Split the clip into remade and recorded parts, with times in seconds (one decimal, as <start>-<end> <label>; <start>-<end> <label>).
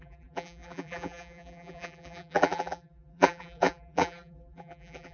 0.0-5.1 remade